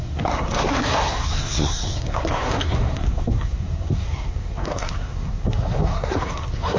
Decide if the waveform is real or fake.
fake